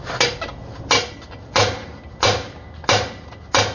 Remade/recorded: recorded